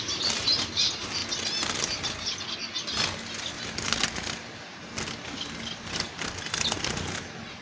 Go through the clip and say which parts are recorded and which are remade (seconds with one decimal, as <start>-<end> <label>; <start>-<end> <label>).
0.0-7.6 recorded